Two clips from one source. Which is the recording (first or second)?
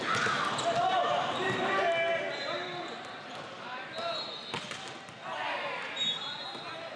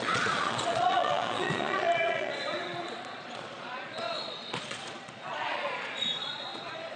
first